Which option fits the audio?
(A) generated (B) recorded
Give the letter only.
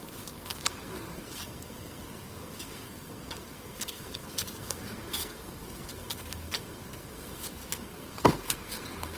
A